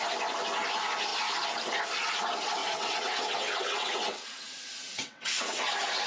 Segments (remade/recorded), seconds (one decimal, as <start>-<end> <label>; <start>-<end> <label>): 0.0-2.6 recorded; 2.6-5.6 remade; 5.6-6.1 recorded